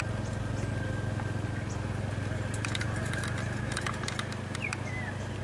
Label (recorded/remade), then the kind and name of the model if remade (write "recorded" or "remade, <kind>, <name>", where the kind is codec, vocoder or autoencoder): recorded